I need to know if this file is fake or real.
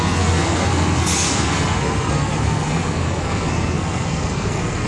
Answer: fake